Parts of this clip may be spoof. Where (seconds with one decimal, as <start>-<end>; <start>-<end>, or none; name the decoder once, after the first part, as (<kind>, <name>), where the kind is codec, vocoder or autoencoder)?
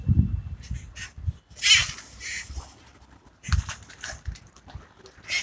none